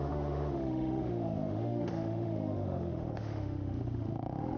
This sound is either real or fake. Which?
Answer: fake